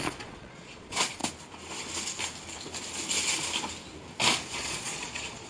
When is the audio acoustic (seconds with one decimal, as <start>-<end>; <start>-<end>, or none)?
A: 1.2-4.5